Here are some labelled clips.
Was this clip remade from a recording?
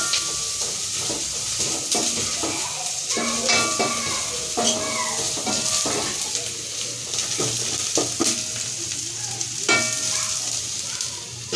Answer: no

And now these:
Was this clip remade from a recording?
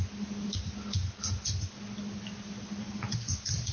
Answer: no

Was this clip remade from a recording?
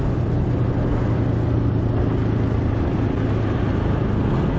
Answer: no